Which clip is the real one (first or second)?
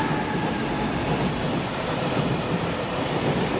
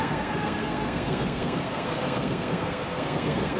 first